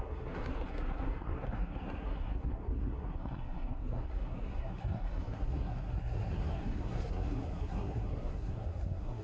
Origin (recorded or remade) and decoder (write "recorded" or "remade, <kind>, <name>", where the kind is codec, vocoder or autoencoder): remade, codec, SNAC